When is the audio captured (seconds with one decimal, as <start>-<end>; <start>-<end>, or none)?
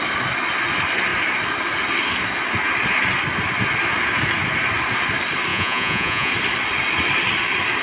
0.0-5.5; 6.3-7.8